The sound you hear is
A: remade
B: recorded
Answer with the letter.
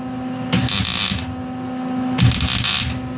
B